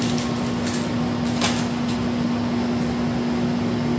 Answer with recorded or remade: recorded